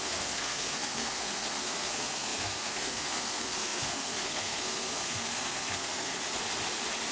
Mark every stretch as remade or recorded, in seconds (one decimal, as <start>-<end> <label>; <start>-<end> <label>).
0.0-6.1 remade; 6.1-7.1 recorded